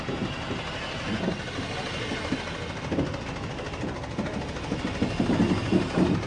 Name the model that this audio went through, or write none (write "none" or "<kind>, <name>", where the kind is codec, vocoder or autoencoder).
none